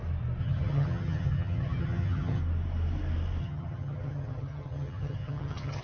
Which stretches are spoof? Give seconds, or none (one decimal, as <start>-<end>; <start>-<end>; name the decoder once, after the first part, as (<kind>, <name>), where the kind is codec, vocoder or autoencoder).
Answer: 0.4-2.4 (vocoder, HiFi-GAN); 3.4-5.8